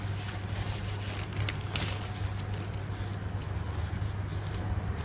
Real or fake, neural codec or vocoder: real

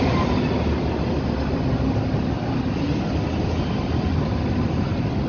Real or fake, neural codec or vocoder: real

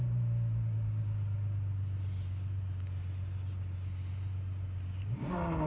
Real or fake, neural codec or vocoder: real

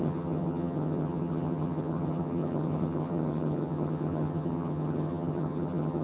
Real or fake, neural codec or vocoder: fake, vocoder, HiFi-GAN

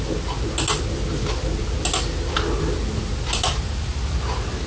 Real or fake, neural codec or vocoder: real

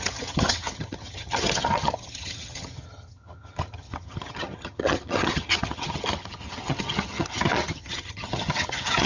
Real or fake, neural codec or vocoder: fake, vocoder, HiFi-GAN